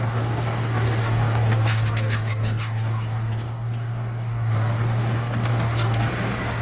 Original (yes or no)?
no